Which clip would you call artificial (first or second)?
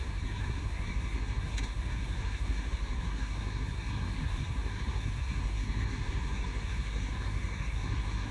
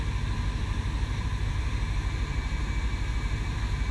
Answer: first